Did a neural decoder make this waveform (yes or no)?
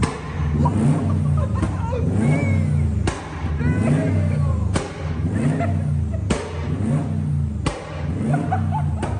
no